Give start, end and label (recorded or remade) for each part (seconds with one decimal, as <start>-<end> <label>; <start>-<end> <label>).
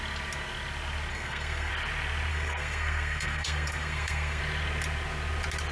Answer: 0.0-1.1 recorded; 1.1-1.7 remade; 1.7-2.3 recorded; 2.3-4.4 remade; 4.4-5.7 recorded